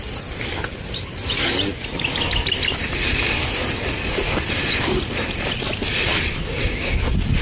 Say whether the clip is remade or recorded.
recorded